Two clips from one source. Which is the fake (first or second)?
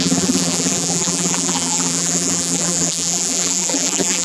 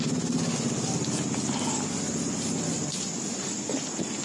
first